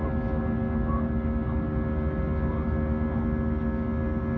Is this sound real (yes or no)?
yes